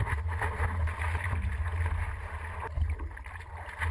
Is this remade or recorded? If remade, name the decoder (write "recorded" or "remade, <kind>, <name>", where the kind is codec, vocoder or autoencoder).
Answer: recorded